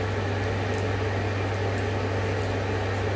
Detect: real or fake real